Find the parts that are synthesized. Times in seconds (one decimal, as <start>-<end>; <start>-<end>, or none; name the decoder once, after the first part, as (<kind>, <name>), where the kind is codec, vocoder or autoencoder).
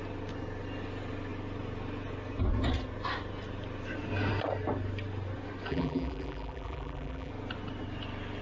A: 5.7-7.3 (vocoder, BigVGAN v2)